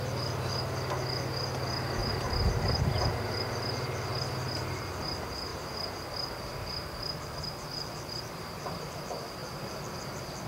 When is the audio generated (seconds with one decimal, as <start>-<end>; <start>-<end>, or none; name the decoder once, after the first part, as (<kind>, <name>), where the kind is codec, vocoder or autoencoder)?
2.0-3.6 (vocoder, BigVGAN v2)